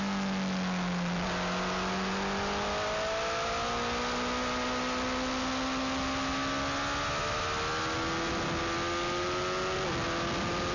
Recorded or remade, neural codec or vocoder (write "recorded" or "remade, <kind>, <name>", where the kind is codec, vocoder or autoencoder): recorded